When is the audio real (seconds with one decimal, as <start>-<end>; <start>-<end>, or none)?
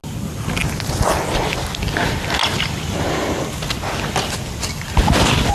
0.0-5.5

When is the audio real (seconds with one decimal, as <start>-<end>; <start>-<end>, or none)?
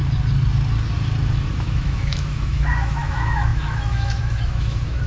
0.0-1.5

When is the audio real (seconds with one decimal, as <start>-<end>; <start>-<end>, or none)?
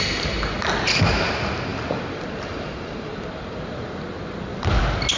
0.0-1.7; 4.8-5.2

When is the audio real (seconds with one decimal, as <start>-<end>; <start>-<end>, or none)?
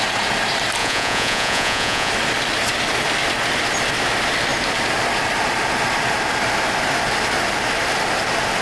0.0-0.8; 2.1-8.6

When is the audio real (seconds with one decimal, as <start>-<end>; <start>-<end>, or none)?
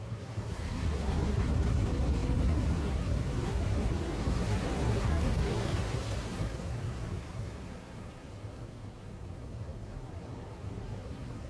none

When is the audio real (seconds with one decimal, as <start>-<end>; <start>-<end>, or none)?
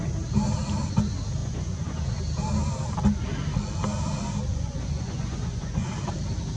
0.0-1.4; 2.2-4.5; 5.9-6.6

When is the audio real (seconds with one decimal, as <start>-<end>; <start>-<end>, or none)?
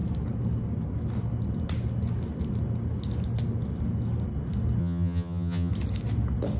0.0-4.8; 5.7-6.6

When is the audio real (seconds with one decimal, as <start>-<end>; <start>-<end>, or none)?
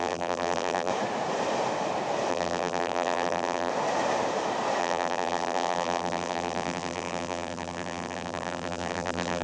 0.9-2.3; 3.7-4.8